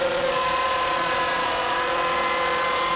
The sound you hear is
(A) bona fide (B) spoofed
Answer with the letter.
B